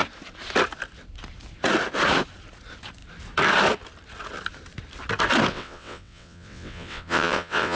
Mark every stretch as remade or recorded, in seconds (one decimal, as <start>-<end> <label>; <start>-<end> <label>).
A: 0.0-5.5 recorded; 5.5-7.8 remade